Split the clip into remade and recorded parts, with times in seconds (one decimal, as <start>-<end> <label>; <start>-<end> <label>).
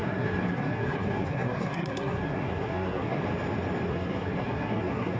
0.0-3.2 remade; 3.2-3.9 recorded; 3.9-5.2 remade